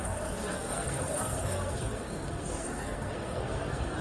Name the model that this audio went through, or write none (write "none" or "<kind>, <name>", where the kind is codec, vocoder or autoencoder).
codec, SNAC